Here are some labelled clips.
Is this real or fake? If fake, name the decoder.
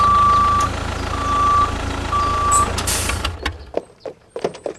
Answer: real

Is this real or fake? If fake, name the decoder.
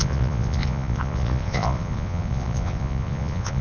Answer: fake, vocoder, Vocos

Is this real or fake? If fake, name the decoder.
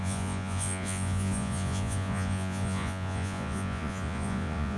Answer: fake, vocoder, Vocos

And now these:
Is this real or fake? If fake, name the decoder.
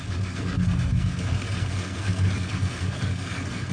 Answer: fake, codec, SNAC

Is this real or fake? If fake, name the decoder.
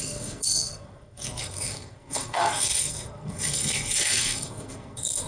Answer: fake, codec, SNAC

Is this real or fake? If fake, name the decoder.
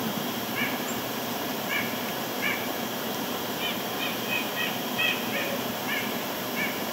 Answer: fake, vocoder, BigVGAN v2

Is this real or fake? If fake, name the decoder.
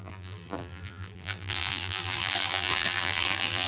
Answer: fake, vocoder, BigVGAN v2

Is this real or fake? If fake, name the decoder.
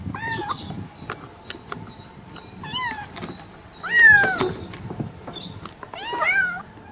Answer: real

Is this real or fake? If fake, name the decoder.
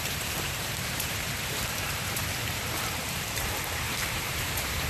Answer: fake, vocoder, BigVGAN v2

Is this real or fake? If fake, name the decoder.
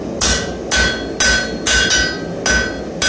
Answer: real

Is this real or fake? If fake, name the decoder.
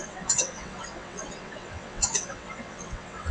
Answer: fake, vocoder, WaveNeXt